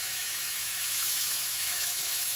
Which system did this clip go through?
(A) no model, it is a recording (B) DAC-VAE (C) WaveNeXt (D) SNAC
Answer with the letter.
B